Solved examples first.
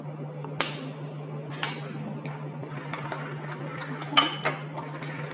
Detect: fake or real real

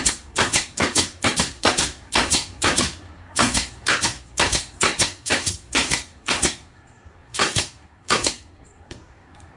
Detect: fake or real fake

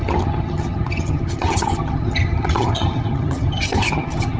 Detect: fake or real fake